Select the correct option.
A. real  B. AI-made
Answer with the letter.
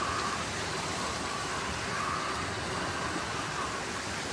A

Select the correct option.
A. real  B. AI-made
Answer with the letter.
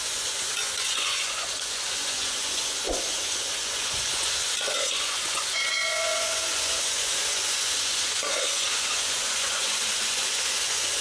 B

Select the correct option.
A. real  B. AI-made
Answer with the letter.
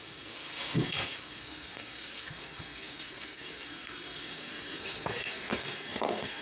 B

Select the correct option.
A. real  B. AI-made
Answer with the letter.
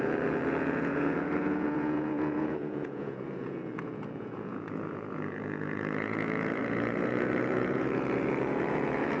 B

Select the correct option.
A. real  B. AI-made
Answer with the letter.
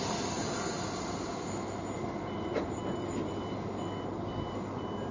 A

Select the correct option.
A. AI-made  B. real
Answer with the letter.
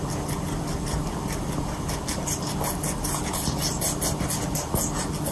B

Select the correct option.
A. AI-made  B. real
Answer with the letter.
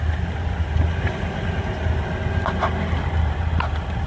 B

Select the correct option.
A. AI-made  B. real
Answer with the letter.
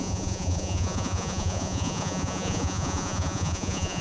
A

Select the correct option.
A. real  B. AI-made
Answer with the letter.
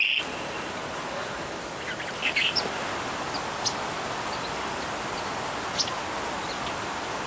A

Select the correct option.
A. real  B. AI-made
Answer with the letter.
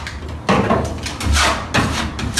A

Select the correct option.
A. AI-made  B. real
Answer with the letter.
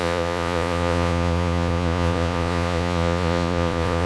A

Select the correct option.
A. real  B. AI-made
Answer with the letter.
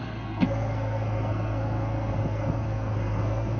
B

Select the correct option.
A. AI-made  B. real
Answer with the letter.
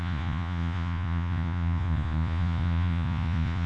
A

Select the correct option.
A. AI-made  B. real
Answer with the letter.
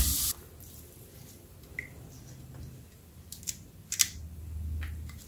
A